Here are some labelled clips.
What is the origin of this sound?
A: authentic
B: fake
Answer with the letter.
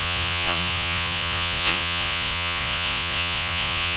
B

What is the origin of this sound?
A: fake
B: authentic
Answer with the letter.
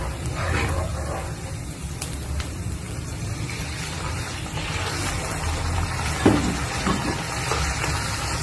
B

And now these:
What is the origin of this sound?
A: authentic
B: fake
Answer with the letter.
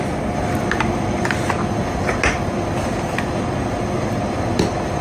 A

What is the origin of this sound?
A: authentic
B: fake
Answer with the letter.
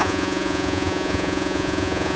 B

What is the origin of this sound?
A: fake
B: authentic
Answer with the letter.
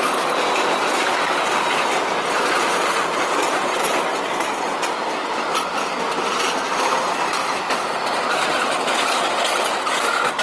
B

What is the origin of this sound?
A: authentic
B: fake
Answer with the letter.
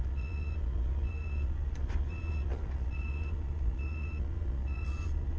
B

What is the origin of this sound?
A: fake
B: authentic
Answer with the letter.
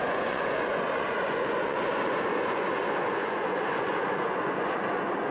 A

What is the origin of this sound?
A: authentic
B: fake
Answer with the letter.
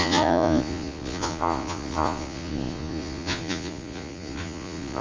B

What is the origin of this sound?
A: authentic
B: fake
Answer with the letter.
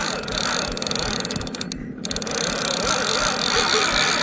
A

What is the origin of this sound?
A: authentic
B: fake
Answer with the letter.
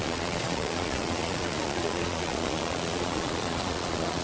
B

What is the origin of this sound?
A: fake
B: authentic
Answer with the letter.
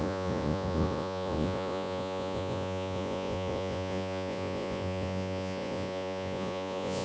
A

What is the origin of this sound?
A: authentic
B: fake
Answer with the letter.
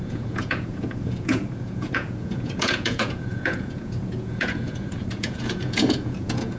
B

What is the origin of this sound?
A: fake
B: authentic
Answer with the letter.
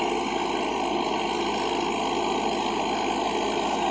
B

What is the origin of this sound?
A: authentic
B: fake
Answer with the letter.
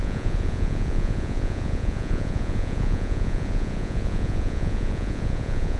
B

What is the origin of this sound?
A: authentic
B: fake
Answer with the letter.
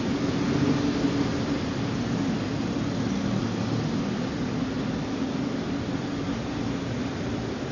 A